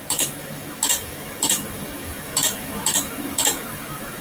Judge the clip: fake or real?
fake